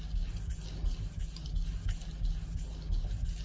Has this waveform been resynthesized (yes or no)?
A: no